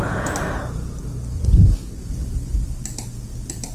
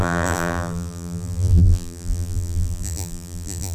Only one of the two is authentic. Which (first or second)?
first